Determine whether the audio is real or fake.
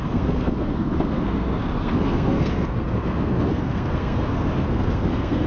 fake